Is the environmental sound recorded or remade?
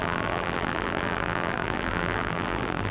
remade